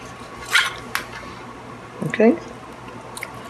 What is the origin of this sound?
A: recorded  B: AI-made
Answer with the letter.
A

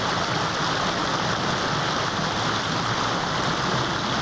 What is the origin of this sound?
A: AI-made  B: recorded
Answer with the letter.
B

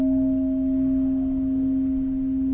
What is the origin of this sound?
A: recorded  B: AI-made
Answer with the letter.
A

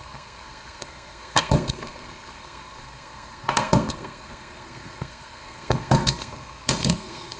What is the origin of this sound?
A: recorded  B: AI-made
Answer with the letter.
B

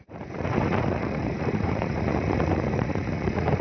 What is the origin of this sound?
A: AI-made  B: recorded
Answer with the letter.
A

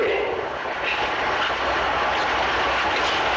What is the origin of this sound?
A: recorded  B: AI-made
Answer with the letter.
A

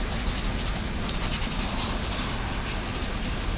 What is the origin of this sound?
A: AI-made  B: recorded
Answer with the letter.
B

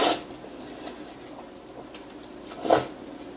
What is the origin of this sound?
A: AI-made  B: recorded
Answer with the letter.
B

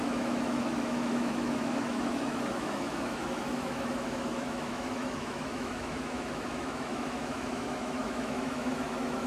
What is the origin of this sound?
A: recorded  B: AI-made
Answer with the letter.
B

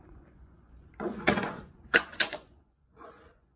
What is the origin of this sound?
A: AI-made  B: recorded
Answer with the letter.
A